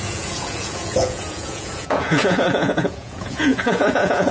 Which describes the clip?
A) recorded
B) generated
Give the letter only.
B